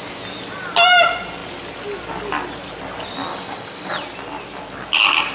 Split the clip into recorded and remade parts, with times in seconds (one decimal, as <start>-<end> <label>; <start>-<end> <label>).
0.0-3.3 recorded; 3.3-3.9 remade; 3.9-5.3 recorded